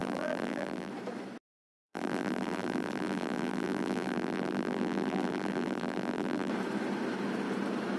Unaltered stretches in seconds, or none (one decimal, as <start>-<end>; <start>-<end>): 0.9-1.8; 6.5-8.0